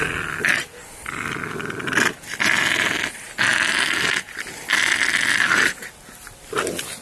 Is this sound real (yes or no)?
yes